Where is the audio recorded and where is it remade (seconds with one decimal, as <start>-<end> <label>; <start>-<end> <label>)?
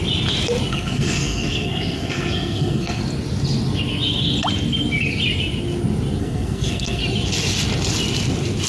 0.0-0.7 recorded; 0.7-3.0 remade; 3.0-6.2 recorded; 6.2-7.0 remade; 7.0-8.7 recorded